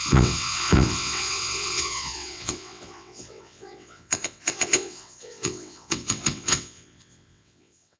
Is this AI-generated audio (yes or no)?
yes